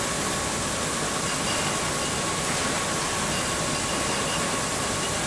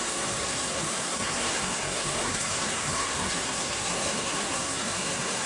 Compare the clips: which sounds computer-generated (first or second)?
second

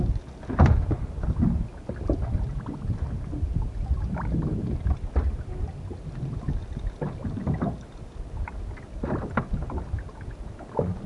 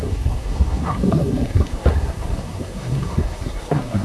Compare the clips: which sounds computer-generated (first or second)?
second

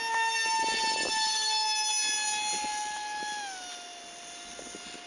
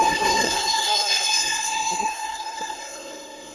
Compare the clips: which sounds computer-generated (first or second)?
second